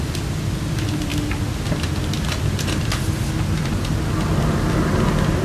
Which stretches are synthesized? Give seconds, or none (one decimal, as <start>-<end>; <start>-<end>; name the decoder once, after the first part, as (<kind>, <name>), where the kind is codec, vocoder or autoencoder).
none